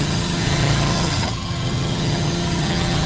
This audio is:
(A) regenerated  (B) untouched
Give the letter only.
A